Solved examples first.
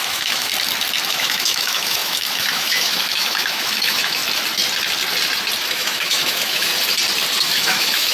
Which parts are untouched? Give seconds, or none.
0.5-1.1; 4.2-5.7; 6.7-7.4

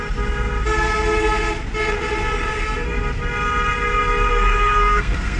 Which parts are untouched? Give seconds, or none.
0.0-2.5; 3.0-4.3

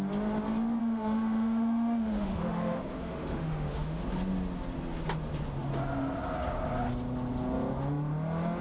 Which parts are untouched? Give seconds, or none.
0.0-0.8; 4.0-8.6

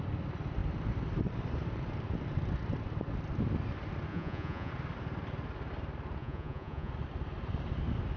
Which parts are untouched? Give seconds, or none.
0.0-4.1; 4.7-6.2; 6.9-8.2

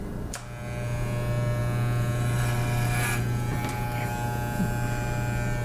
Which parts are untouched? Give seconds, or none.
0.0-5.6

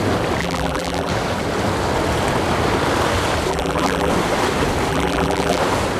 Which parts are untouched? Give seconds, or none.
0.0-0.4; 1.1-3.5; 4.1-4.9; 5.6-6.0